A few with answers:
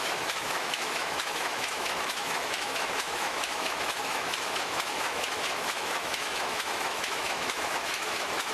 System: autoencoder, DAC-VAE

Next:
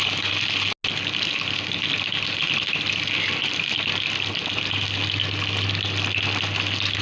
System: none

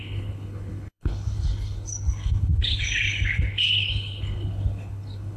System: codec, HILCodec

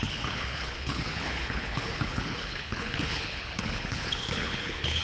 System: codec, HILCodec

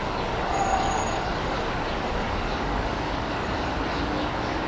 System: codec, DAC